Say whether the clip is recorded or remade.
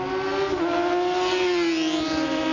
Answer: recorded